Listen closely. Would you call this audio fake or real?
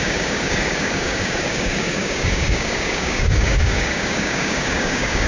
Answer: fake